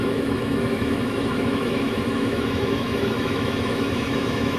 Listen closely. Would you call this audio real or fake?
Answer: fake